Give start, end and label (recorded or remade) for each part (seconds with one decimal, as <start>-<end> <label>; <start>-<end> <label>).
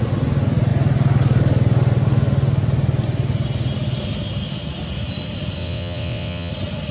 0.0-5.6 recorded; 5.6-6.5 remade; 6.5-6.9 recorded